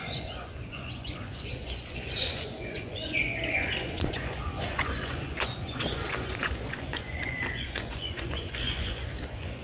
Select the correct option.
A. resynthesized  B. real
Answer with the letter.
A